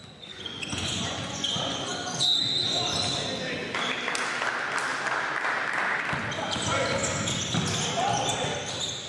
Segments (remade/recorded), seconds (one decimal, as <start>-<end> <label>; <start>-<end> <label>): 0.0-2.4 remade; 2.4-9.1 recorded